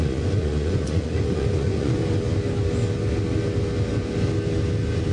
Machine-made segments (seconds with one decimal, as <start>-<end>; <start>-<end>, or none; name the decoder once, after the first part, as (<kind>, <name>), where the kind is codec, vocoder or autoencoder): 0.0-2.0 (vocoder, Vocos)